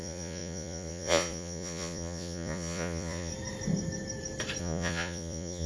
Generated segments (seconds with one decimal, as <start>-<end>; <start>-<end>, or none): 0.0-3.3; 4.6-5.7